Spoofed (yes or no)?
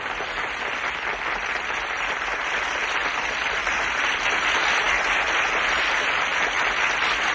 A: no